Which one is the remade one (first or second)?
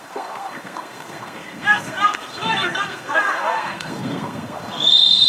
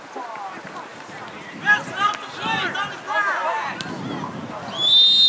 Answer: first